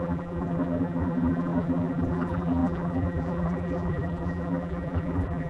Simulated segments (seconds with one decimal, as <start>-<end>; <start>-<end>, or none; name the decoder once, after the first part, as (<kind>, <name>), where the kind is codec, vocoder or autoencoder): 0.0-5.5 (vocoder, BigVGAN v2)